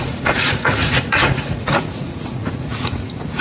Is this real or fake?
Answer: fake